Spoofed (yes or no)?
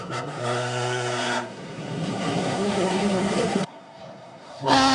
yes